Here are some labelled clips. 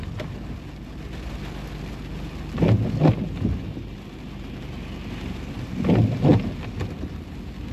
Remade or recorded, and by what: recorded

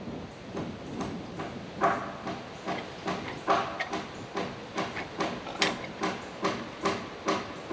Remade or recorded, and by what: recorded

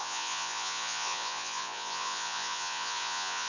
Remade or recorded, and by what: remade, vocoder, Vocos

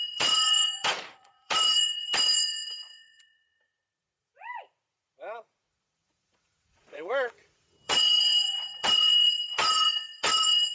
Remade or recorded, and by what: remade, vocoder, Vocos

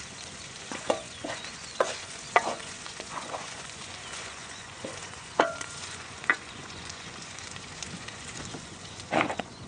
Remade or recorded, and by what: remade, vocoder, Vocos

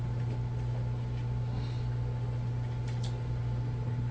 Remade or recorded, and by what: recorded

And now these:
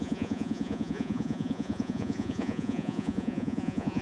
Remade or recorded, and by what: remade, vocoder, Vocos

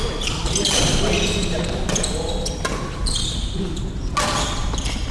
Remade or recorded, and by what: recorded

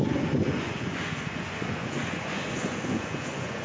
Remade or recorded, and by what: remade, vocoder, Vocos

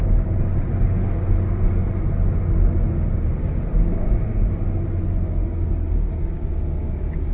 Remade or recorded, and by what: recorded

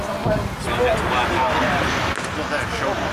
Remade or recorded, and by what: recorded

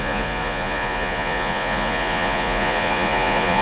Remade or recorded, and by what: remade, vocoder, Vocos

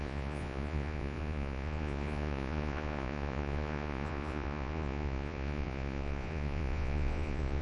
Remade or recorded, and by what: remade, vocoder, Vocos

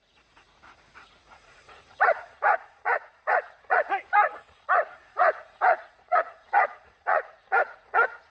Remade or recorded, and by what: remade, vocoder, Vocos